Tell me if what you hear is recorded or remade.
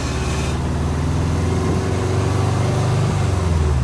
recorded